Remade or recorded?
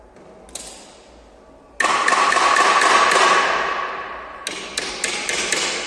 recorded